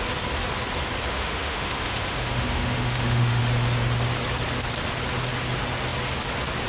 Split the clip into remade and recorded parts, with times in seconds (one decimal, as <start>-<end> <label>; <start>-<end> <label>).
0.0-1.1 recorded; 1.1-3.4 remade; 3.4-6.7 recorded